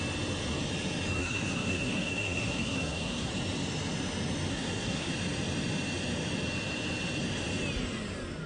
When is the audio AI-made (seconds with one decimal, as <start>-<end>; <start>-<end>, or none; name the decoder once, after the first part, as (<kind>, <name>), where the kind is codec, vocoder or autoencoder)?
1.2-3.3 (codec, SNAC); 4.5-5.1

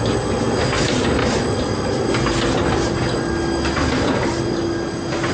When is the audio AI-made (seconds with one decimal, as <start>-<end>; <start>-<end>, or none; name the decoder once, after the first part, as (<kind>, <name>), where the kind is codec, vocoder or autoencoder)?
none